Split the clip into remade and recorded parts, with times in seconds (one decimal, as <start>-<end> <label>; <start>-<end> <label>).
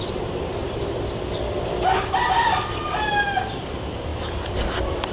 0.0-5.1 recorded